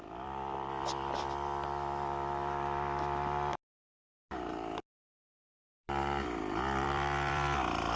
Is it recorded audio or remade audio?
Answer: remade